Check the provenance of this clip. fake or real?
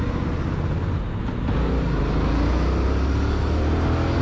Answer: real